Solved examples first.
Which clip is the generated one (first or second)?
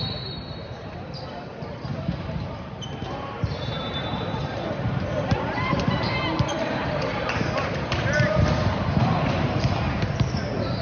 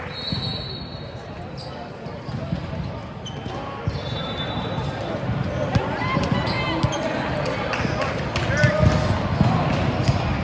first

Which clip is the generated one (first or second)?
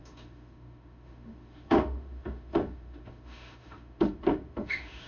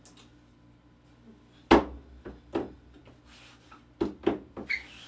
first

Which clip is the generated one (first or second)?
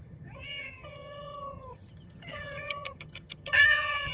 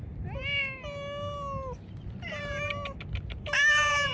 first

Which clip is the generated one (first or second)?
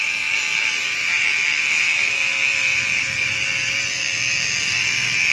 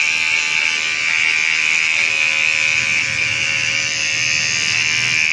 first